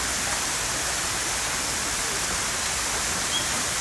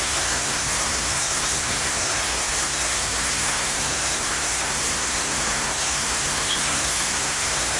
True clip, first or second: first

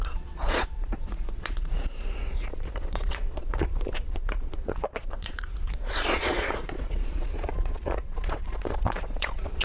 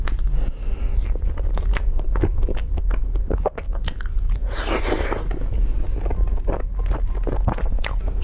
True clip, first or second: second